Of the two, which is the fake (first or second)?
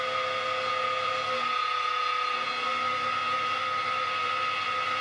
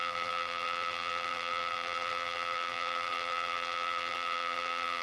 second